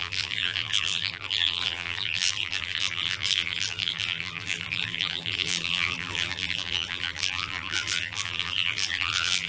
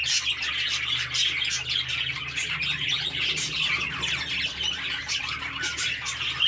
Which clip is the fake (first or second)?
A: first